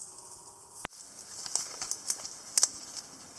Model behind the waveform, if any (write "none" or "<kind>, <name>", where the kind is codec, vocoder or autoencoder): none